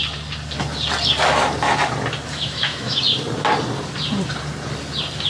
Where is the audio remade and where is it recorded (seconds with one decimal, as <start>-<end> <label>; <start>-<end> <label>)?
0.0-2.3 recorded; 2.3-3.0 remade; 3.0-5.3 recorded